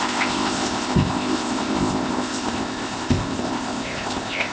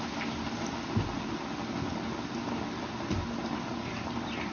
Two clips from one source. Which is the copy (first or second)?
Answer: first